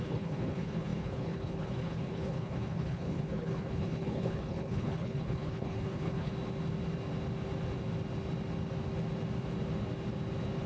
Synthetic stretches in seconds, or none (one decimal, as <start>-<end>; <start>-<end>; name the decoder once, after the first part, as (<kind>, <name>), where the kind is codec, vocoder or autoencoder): 0.0-6.3 (codec, HILCodec)

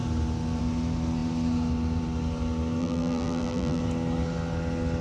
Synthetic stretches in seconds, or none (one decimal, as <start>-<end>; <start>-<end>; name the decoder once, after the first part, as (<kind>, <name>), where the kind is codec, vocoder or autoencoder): 2.8-3.8 (vocoder, BigVGAN v2)